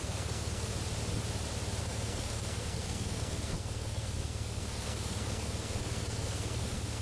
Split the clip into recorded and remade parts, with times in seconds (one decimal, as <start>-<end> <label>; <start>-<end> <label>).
0.0-0.7 remade; 0.7-1.8 recorded; 1.8-7.0 remade